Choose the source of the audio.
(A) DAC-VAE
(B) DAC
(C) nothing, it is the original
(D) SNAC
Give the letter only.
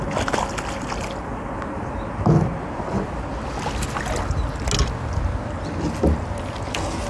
C